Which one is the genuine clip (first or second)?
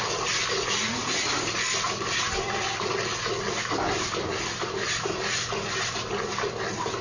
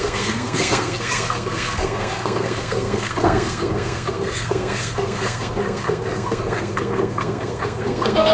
first